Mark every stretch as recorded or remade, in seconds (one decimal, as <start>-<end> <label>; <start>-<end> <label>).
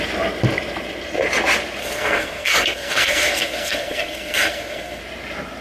0.0-1.8 recorded; 1.8-5.0 remade; 5.0-5.6 recorded